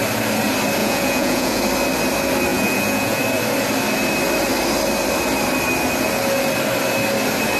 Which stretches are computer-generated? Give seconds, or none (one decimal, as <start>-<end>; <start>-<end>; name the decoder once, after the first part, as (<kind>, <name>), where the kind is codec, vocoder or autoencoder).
0.8-1.6 (vocoder, Vocos); 2.5-3.2

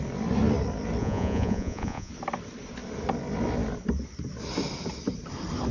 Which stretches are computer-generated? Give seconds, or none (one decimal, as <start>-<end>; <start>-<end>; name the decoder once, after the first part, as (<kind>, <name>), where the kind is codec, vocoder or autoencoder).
1.0-2.1 (vocoder, Vocos)

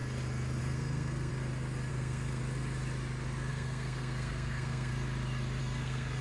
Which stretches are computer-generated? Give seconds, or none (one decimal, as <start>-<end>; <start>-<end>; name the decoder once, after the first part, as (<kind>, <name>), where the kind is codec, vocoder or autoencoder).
0.6-1.3 (codec, SNAC); 1.9-2.4; 3.5-4.9; 5.6-6.2

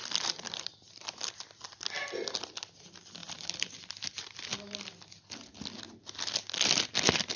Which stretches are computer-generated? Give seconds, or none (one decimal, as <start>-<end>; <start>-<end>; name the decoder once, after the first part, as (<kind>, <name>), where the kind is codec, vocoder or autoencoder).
0.0-0.9 (vocoder, BigVGAN v2); 3.2-4.2

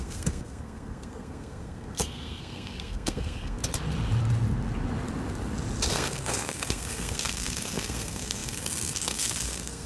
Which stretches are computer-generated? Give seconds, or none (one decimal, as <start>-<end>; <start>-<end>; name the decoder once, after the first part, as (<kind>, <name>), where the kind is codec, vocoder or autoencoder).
0.0-3.6 (codec, SNAC); 5.9-9.9

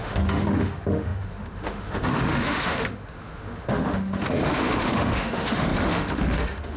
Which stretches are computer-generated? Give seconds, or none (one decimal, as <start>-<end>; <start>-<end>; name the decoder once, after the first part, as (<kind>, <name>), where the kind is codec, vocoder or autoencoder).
0.0-6.8 (autoencoder, DAC-VAE)

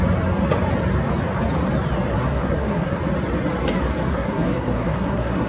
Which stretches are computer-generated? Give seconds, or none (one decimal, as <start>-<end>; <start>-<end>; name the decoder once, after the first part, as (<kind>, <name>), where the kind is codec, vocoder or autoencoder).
2.1-3.0 (codec, SNAC); 4.1-5.5